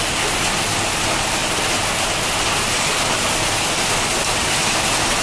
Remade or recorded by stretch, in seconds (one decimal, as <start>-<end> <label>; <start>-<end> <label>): 0.0-5.2 recorded